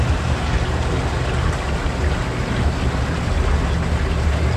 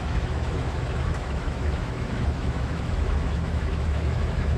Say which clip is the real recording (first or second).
first